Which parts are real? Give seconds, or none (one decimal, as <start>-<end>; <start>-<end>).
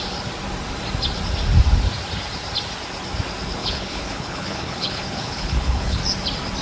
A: 0.0-3.6; 6.0-6.6